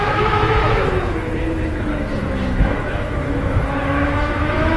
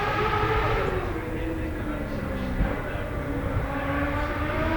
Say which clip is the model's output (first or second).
first